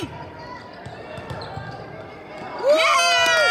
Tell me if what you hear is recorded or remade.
recorded